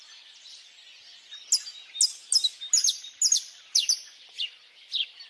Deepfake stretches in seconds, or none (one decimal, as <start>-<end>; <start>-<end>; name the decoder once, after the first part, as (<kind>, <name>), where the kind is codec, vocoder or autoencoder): none